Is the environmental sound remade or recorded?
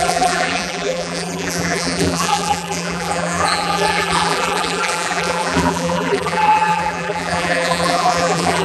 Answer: remade